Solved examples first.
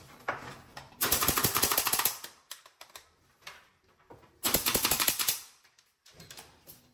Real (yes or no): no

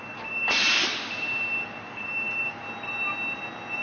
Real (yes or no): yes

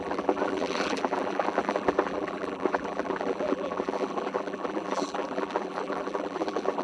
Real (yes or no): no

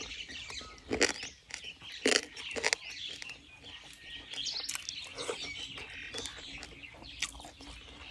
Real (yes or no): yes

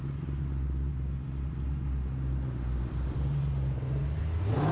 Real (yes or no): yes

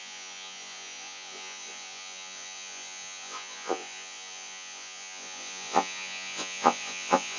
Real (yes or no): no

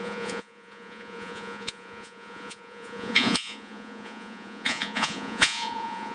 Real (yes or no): no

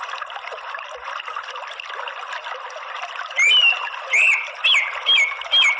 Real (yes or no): yes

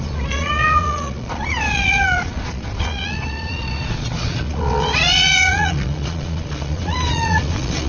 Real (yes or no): no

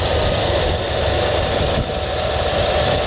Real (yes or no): no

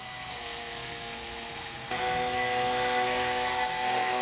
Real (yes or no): no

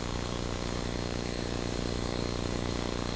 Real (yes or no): no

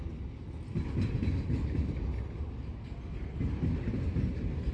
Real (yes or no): yes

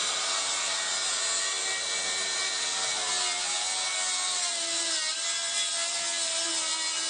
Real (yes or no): yes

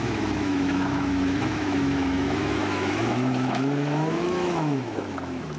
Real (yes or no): no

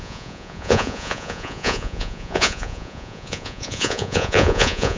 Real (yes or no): no